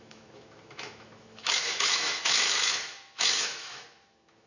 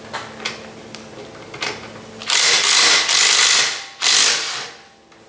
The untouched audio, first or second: second